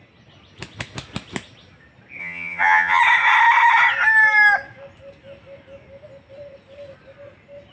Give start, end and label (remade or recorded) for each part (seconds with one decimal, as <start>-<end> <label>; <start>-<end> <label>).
0.0-2.2 recorded; 2.2-3.0 remade; 3.0-7.7 recorded